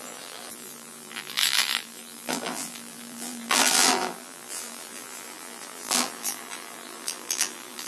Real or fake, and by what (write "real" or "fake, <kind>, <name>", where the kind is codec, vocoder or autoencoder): fake, vocoder, BigVGAN v2